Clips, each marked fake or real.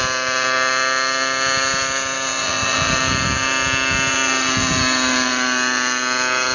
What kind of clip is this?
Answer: real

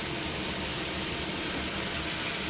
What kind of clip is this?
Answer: real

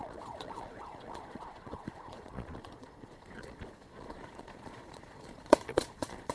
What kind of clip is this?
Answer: fake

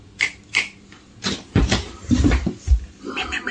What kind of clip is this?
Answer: real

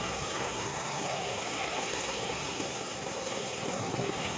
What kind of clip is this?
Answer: fake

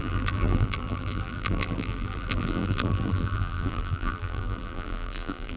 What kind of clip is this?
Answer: fake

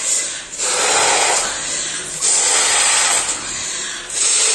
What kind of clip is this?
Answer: real